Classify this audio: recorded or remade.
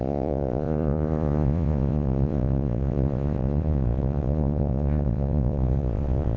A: remade